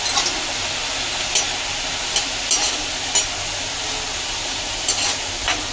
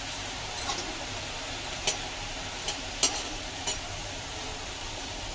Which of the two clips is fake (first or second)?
second